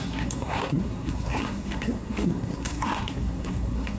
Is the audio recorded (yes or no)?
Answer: no